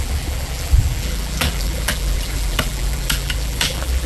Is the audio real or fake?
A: fake